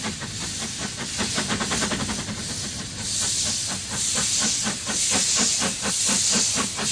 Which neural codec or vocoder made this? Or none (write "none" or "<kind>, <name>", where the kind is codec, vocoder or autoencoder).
none